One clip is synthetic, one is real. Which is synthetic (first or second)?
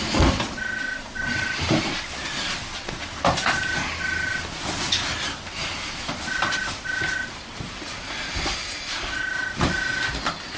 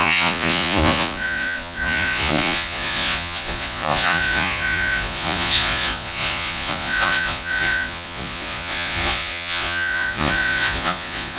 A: second